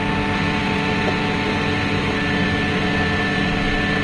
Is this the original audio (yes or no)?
yes